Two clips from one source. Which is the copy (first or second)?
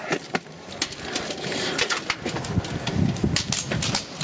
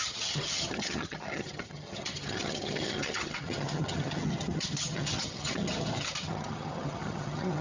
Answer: second